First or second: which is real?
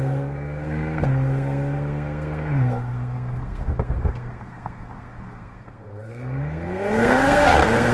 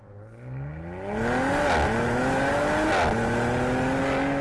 second